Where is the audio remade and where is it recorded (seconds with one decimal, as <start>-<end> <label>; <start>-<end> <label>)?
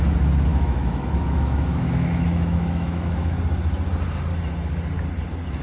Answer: 0.0-0.5 recorded; 0.5-3.4 remade; 3.4-5.6 recorded